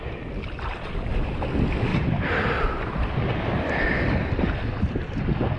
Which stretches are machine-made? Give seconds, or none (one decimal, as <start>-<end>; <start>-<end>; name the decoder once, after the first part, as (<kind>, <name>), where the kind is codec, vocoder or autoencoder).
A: none